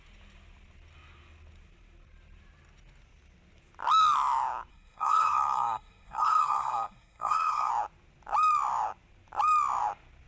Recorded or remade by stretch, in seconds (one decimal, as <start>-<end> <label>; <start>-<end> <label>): 0.0-4.7 recorded; 4.7-7.7 remade; 7.7-10.3 recorded